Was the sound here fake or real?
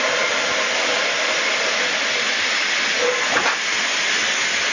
real